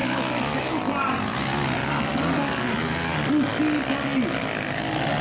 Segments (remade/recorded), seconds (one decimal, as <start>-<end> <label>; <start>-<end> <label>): 0.0-0.8 remade; 0.8-5.2 recorded